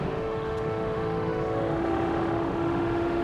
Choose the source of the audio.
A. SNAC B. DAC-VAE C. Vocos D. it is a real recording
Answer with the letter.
B